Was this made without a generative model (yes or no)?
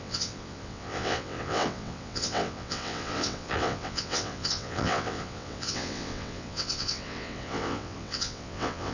no